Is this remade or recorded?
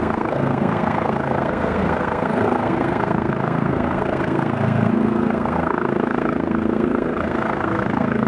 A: remade